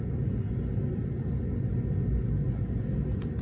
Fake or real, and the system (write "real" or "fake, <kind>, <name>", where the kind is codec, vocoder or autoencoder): real